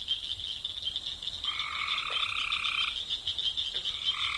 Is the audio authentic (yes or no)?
yes